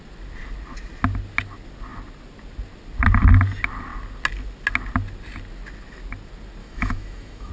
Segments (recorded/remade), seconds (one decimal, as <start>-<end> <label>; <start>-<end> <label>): 0.0-6.6 recorded; 6.6-7.5 remade